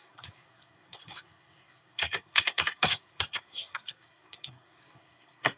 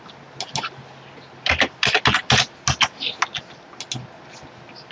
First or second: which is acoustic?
second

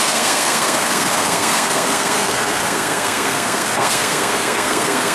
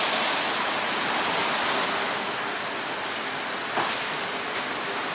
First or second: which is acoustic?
second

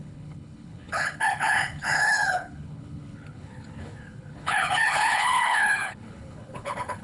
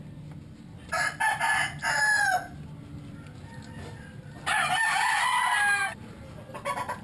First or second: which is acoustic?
second